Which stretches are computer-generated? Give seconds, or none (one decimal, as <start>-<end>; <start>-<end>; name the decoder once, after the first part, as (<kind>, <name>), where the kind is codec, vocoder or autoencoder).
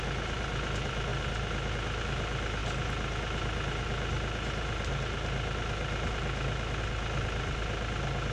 none